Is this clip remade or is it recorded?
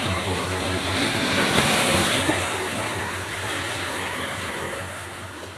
remade